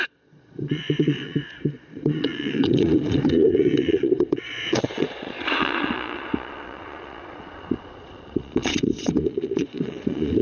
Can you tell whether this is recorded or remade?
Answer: remade